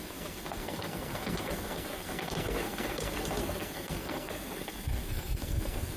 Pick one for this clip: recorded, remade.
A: remade